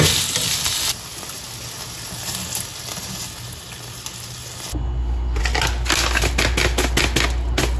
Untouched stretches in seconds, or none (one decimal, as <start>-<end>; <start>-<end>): 0.0-7.8